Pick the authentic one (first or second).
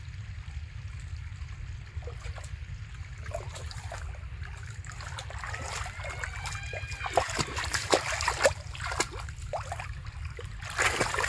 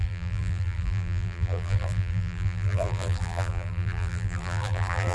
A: first